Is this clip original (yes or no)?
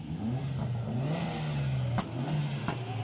yes